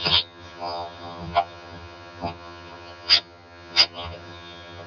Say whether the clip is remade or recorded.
remade